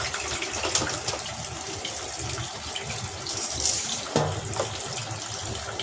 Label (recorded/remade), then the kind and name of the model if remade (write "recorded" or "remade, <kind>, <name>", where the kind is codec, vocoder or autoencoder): recorded